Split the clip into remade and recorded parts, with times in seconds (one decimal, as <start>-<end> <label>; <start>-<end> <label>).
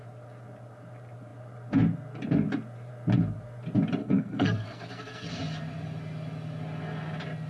0.0-4.0 recorded; 4.0-5.4 remade; 5.4-7.5 recorded